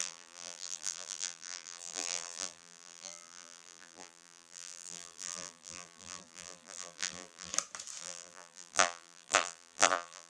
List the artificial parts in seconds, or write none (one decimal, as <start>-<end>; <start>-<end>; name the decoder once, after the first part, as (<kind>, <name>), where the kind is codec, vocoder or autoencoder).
0.0-7.5 (vocoder, BigVGAN v2); 8.0-10.3

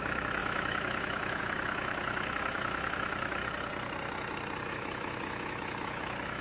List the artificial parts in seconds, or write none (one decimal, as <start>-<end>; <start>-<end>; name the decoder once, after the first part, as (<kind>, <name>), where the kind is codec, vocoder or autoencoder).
0.0-3.4 (autoencoder, DAC-VAE); 4.7-6.4